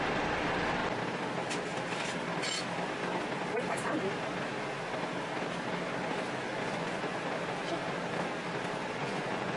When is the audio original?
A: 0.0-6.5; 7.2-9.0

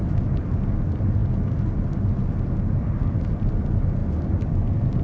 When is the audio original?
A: 0.0-5.0

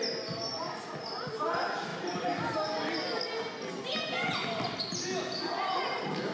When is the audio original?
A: 0.0-6.3

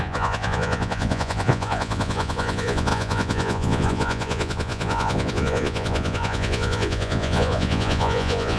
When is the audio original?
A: none